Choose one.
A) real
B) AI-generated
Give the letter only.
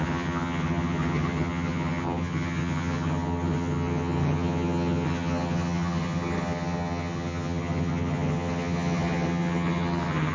B